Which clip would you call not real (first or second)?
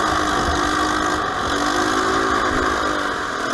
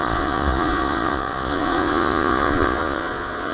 second